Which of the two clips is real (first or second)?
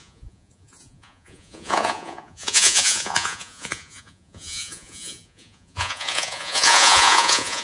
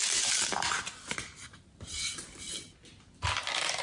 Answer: second